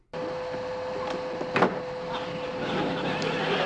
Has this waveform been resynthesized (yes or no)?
no